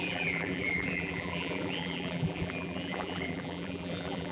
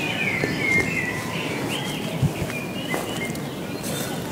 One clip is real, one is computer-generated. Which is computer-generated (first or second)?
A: first